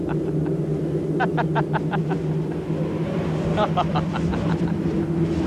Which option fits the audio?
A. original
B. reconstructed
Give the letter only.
A